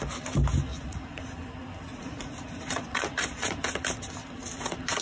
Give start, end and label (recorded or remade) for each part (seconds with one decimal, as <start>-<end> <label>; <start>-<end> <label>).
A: 0.0-0.7 recorded; 0.7-1.2 remade; 1.2-1.9 recorded; 1.9-3.6 remade; 3.6-5.0 recorded